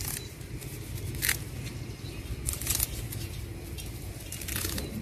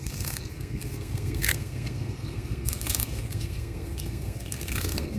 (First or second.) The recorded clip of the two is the first